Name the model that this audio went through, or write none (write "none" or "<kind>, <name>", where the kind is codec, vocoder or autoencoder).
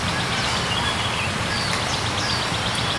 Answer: none